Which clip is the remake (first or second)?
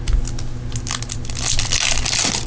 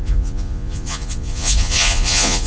second